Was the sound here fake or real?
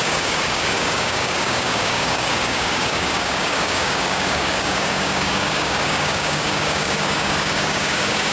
fake